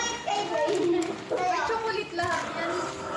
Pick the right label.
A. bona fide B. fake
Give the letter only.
B